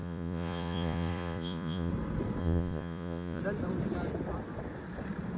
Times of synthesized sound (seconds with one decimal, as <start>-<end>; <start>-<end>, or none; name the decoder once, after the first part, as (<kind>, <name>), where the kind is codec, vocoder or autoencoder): 0.0-1.9 (vocoder, Vocos); 2.4-3.4